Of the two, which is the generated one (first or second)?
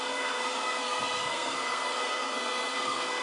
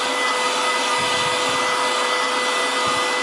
first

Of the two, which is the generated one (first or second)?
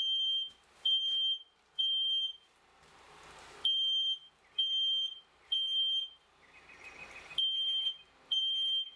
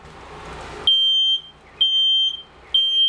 first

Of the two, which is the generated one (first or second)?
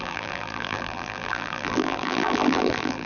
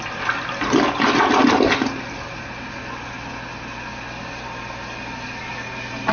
first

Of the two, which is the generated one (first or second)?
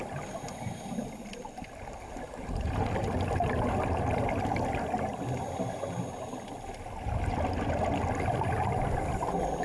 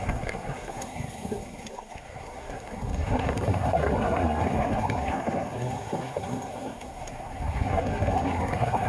second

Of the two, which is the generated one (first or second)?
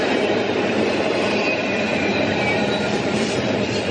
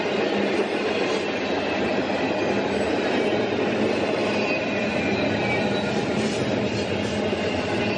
first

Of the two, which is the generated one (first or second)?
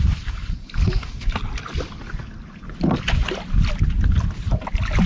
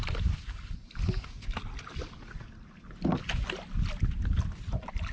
first